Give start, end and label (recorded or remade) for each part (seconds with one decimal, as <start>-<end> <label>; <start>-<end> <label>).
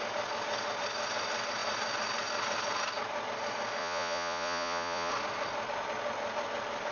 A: 0.0-3.8 recorded; 3.8-5.1 remade; 5.1-6.9 recorded